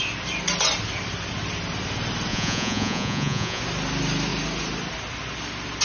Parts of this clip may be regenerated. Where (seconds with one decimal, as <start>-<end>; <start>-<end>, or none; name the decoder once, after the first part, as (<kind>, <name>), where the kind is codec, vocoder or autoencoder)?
2.3-3.6 (vocoder, Vocos)